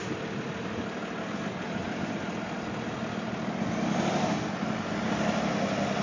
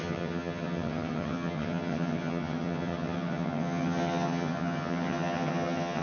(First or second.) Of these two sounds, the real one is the first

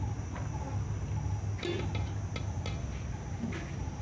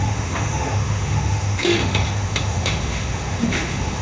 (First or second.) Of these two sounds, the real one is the first